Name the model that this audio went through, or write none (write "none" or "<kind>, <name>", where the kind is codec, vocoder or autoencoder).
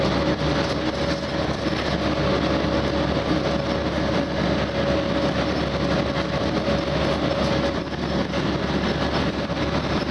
none